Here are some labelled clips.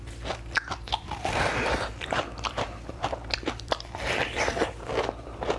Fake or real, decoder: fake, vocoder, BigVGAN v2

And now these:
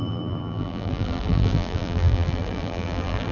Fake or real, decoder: fake, vocoder, BigVGAN v2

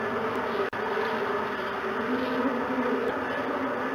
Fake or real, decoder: fake, vocoder, BigVGAN v2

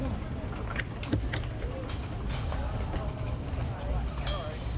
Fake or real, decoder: real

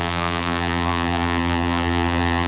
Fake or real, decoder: fake, vocoder, BigVGAN v2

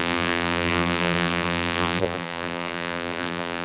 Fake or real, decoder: fake, vocoder, BigVGAN v2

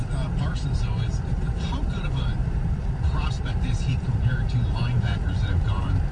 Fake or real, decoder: fake, vocoder, BigVGAN v2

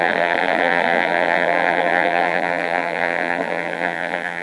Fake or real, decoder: fake, vocoder, BigVGAN v2